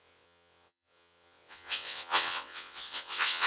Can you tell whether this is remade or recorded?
remade